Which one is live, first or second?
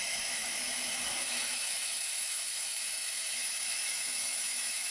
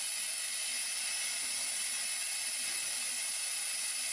second